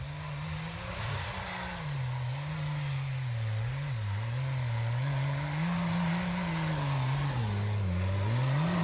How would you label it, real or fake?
real